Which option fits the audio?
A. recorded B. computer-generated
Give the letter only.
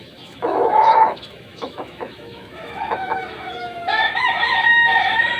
B